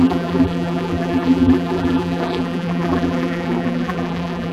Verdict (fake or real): fake